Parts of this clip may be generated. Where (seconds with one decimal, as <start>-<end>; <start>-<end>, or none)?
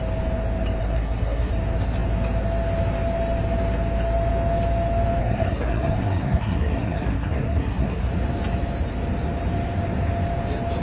0.8-1.5; 5.2-8.1